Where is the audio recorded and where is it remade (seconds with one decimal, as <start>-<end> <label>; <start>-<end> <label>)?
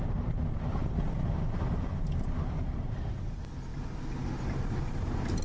0.0-3.7 recorded; 3.7-5.4 remade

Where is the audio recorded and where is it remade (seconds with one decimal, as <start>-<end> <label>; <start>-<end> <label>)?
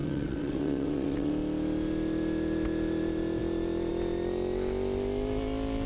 0.0-1.3 remade; 1.3-5.9 recorded